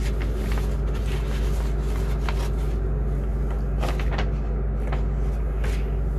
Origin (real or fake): real